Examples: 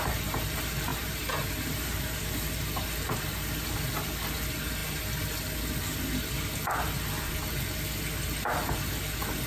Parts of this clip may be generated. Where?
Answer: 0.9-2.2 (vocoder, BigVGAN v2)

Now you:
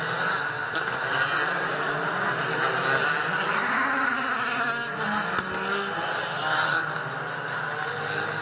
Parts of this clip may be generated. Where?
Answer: none

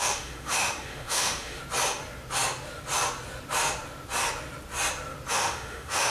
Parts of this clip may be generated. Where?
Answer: 0.0-1.6 (autoencoder, DAC-VAE); 5.3-6.1

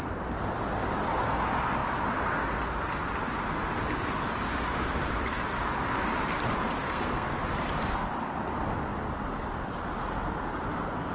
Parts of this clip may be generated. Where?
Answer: 6.8-7.4 (codec, SNAC)

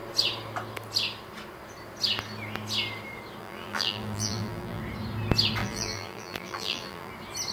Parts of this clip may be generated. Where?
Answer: 3.4-4.8 (vocoder, BigVGAN v2); 5.6-7.1

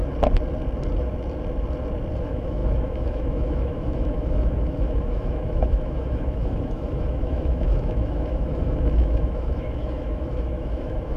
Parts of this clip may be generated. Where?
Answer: 2.2-11.2 (autoencoder, DAC-VAE)